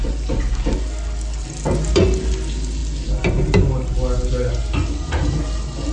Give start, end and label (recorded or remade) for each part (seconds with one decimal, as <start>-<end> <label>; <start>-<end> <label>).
0.0-5.9 recorded